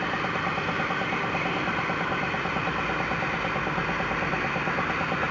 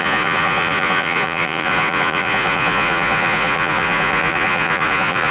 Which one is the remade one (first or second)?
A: second